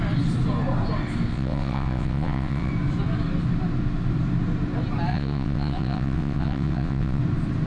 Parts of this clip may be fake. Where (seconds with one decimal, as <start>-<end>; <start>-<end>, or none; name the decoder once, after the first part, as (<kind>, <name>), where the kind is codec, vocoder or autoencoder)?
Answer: 1.3-2.7 (vocoder, WaveNeXt); 5.1-7.2